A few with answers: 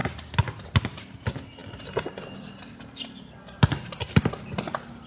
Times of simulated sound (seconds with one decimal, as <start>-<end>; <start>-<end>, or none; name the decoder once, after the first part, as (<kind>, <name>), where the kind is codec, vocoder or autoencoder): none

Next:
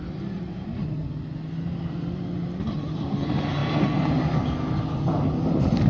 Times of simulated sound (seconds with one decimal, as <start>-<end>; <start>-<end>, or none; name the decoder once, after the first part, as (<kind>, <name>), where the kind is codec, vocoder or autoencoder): none

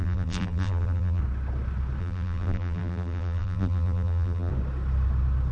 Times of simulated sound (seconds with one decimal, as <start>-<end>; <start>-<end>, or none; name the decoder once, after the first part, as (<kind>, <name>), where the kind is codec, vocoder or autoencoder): 0.0-1.2 (vocoder, BigVGAN v2); 2.0-4.5

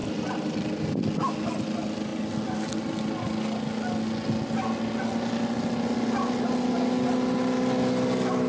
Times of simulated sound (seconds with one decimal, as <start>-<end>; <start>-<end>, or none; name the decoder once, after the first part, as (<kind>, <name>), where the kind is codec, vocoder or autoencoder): 0.0-0.7 (vocoder, BigVGAN v2)